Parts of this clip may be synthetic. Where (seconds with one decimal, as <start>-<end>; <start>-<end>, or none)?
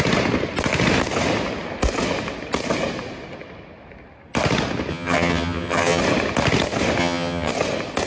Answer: 4.9-6.0; 7.0-7.5